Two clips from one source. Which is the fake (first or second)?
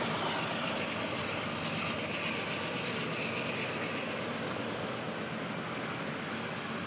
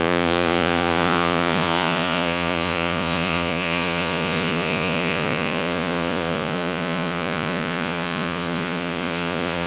second